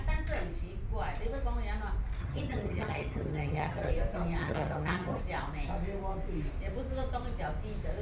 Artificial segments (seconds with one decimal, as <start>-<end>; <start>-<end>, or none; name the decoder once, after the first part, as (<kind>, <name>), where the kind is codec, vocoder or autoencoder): 2.2-3.9 (vocoder, HiFi-GAN); 4.4-5.2